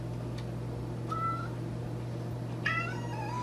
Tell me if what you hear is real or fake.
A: real